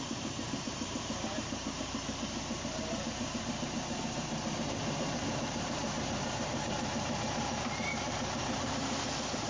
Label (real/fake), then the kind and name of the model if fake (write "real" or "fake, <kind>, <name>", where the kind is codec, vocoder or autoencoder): fake, vocoder, BigVGAN v2